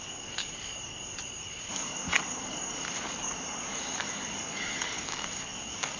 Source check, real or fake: fake